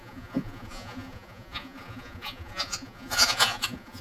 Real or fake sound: fake